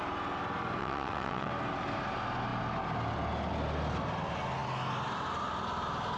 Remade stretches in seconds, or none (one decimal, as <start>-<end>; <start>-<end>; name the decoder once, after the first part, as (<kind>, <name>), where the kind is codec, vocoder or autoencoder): 0.8-1.5 (vocoder, WaveNeXt)